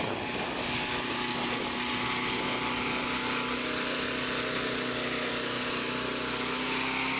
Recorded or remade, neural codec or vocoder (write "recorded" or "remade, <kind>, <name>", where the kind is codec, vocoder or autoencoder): recorded